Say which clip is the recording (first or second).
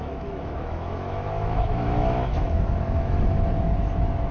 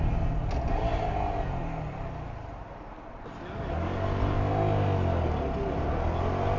second